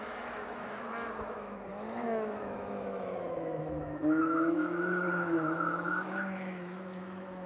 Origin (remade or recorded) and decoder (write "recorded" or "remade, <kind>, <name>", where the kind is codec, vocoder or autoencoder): remade, autoencoder, DAC-VAE